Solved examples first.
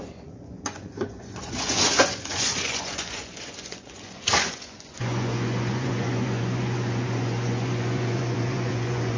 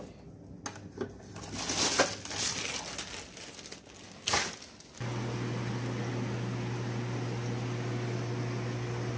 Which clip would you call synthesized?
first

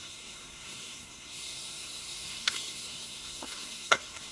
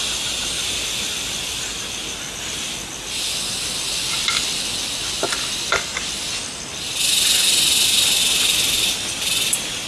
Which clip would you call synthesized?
first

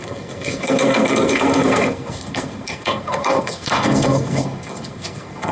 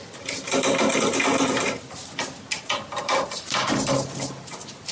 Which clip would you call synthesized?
first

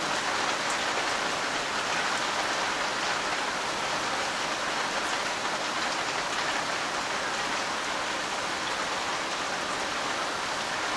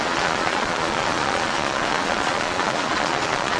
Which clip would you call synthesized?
second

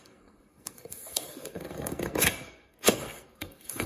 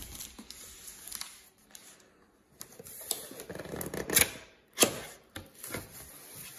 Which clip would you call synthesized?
first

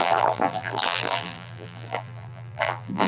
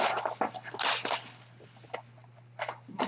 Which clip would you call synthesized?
first